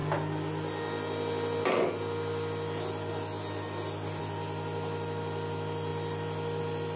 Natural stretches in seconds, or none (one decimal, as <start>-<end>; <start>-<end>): 0.0-7.0